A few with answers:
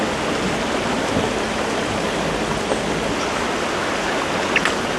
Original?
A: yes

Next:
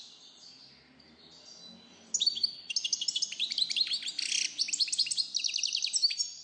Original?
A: yes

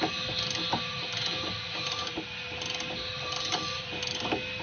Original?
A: yes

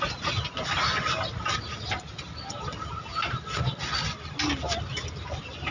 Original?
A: yes